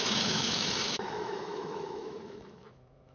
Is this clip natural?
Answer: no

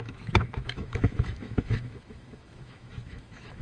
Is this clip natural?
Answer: no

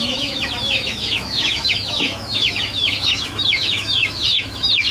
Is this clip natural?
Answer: no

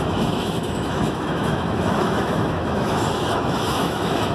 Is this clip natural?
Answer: no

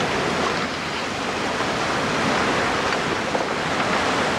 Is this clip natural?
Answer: yes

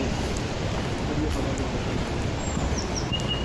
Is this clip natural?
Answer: yes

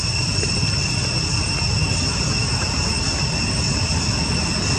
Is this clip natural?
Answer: yes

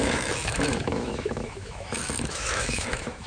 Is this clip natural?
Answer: no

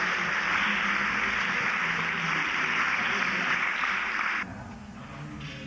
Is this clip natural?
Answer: yes